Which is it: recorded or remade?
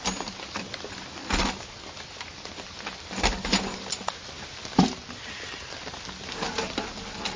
recorded